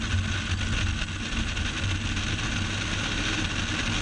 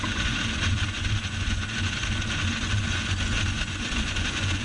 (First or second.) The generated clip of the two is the second